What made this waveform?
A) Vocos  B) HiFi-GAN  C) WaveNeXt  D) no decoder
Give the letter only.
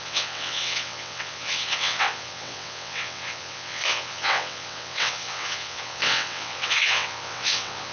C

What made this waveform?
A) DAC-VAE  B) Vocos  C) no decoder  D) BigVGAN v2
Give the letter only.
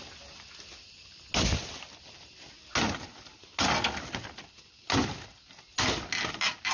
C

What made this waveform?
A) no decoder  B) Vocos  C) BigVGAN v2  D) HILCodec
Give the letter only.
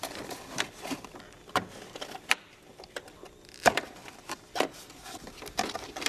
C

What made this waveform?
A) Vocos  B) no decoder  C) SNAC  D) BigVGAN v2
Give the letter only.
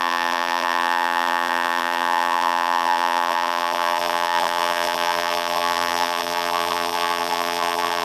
D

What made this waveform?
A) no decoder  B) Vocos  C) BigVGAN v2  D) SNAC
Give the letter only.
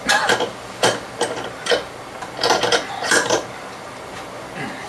C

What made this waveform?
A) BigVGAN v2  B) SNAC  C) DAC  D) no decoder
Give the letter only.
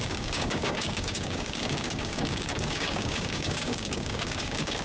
C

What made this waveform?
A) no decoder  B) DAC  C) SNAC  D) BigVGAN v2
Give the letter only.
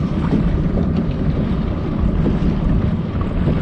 A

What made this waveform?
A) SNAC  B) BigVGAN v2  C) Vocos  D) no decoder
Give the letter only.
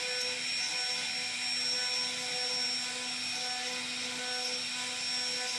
D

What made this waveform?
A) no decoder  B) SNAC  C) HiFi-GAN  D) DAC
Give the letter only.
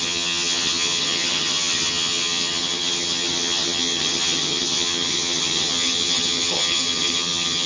C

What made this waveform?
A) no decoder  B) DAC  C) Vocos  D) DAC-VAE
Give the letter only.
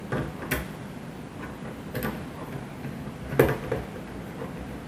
A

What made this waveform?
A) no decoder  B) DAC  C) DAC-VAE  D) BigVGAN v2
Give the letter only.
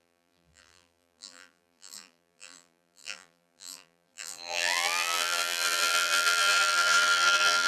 D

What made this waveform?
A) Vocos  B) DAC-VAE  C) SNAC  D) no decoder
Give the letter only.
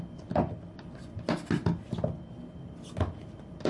D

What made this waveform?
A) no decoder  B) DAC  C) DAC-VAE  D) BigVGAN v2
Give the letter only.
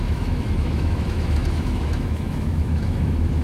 C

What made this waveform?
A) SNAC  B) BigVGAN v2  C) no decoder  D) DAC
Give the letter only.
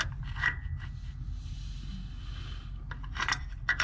C